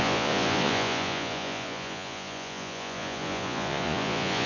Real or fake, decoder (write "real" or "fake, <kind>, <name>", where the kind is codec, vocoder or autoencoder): fake, vocoder, Vocos